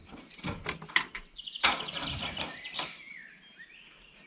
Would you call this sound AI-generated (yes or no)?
no